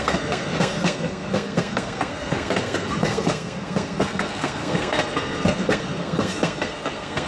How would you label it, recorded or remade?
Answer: remade